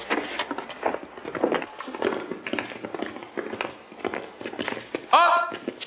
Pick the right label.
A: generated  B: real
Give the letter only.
B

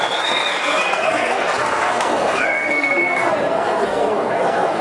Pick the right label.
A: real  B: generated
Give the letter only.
B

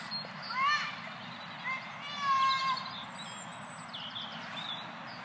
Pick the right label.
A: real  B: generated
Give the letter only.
A